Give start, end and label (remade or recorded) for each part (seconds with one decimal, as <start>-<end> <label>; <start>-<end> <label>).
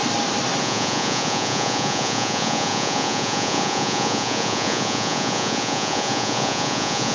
0.0-0.6 recorded; 0.6-7.1 remade